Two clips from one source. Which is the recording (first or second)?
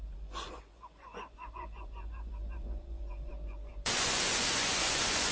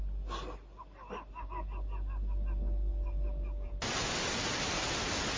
second